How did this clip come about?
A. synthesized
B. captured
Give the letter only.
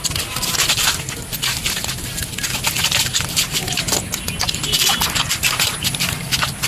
B